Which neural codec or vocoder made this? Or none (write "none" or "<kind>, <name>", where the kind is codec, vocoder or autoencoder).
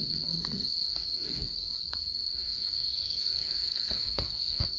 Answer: codec, SNAC